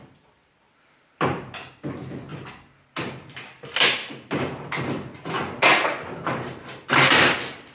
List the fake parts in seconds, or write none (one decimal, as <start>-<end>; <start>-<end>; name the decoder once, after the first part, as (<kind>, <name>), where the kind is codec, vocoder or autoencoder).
none